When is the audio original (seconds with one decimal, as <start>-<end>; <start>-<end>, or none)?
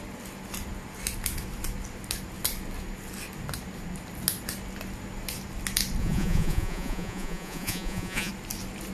0.0-6.0; 8.3-8.9